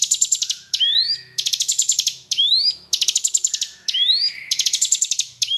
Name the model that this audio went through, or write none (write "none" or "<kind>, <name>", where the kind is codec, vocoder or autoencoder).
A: autoencoder, DAC-VAE